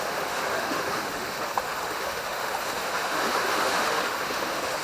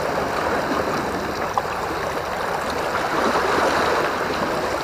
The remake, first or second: first